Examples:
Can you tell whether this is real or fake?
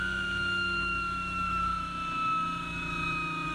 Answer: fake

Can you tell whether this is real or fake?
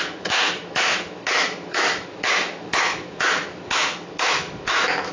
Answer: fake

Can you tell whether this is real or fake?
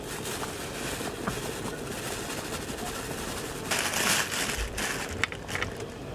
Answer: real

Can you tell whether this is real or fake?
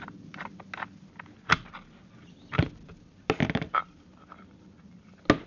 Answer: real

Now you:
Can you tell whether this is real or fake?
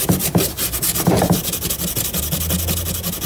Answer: real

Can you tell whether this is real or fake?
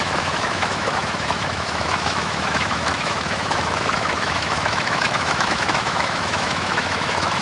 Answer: fake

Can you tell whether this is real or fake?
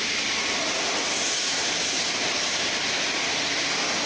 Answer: real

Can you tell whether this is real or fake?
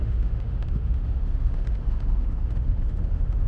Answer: fake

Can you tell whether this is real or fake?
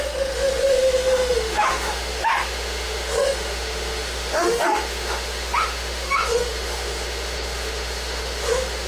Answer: fake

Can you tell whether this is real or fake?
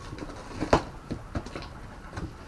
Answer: real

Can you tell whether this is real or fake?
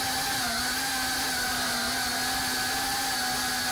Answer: real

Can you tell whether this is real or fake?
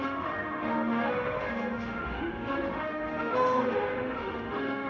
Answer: fake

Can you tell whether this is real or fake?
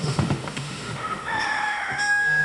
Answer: fake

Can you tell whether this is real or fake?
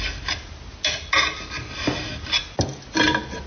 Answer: real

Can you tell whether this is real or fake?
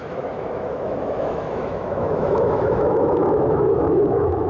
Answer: fake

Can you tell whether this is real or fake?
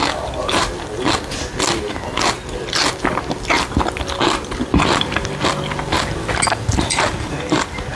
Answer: real